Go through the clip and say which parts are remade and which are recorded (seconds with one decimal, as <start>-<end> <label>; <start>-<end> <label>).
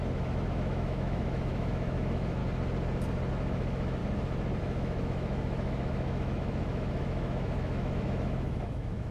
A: 0.0-2.4 remade; 2.4-3.3 recorded; 3.3-4.0 remade; 4.0-4.6 recorded; 4.6-9.1 remade